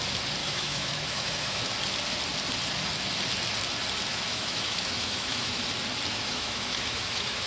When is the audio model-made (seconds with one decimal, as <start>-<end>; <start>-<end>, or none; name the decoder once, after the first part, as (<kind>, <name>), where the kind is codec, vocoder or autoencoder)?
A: 0.4-1.6 (autoencoder, DAC-VAE); 4.1-5.6; 6.1-7.5